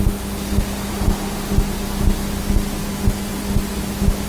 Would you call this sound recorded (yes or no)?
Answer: yes